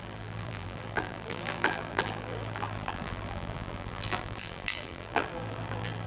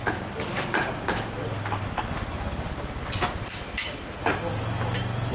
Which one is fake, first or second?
first